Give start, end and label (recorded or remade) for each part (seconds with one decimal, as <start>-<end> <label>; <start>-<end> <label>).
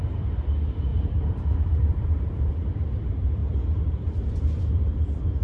0.0-0.9 recorded; 0.9-2.5 remade; 2.5-5.4 recorded